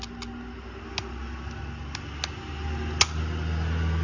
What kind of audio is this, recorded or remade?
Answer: recorded